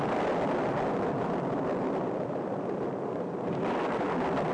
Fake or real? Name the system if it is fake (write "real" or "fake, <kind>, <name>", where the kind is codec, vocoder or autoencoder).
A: fake, vocoder, BigVGAN v2